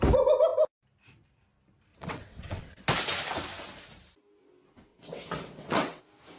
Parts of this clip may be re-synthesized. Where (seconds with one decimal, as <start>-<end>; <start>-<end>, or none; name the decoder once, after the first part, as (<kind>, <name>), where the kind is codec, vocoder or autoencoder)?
1.9-2.8 (vocoder, WaveNeXt); 4.9-6.0